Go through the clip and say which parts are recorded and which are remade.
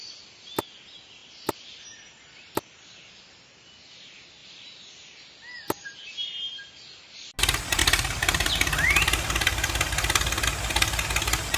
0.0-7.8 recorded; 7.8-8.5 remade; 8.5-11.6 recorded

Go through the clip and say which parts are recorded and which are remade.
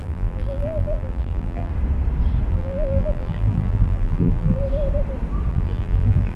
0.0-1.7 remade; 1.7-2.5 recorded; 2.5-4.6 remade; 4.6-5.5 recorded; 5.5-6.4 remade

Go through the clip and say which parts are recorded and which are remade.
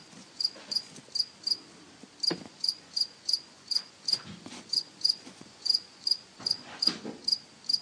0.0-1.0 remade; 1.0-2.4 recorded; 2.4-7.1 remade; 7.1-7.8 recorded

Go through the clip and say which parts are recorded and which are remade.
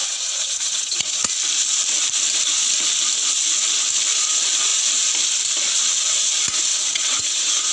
0.0-1.2 remade; 1.2-6.7 recorded; 6.7-7.7 remade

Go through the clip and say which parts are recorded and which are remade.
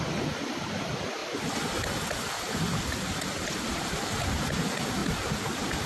0.0-5.0 remade; 5.0-5.5 recorded; 5.5-5.9 remade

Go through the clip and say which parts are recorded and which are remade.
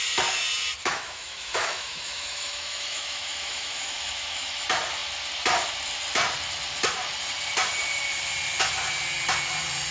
0.0-0.8 recorded; 0.8-4.6 remade; 4.6-9.9 recorded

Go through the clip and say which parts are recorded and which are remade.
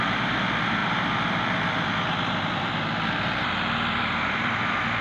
0.0-5.0 remade